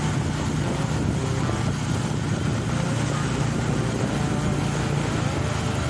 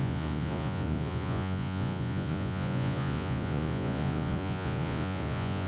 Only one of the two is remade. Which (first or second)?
second